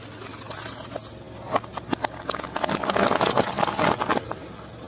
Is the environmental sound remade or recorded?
recorded